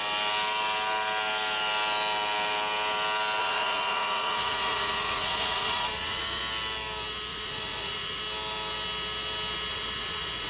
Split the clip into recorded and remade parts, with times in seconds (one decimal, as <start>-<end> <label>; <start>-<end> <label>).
0.0-3.4 recorded; 3.4-6.4 remade; 6.4-7.3 recorded; 7.3-8.2 remade; 8.2-9.7 recorded; 9.7-10.5 remade